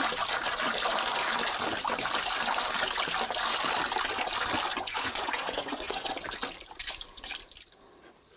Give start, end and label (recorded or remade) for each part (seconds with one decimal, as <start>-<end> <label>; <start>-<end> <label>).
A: 0.0-4.7 recorded; 4.7-6.1 remade; 6.1-6.8 recorded; 6.8-7.3 remade; 7.3-8.4 recorded